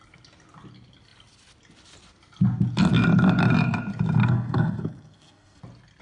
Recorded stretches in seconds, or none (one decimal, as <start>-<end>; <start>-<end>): 0.0-4.2; 5.6-6.0